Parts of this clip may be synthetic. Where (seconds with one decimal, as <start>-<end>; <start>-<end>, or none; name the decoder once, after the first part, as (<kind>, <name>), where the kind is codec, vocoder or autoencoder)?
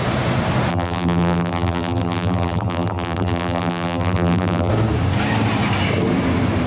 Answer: 0.7-4.7 (vocoder, BigVGAN v2)